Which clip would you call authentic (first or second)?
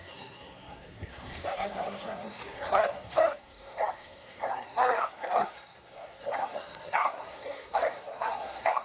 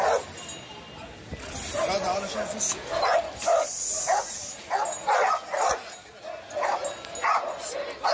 second